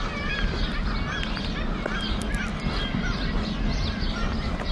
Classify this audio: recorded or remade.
recorded